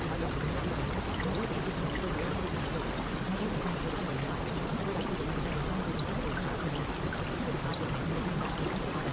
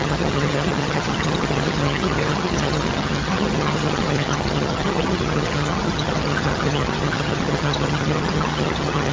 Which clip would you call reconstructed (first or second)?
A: second